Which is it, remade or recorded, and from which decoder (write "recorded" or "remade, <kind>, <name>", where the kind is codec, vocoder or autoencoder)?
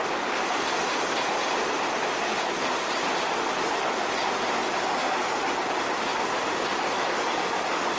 recorded